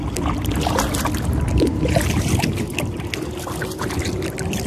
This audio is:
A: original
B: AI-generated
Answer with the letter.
A